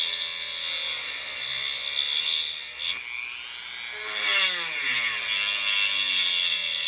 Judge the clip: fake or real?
real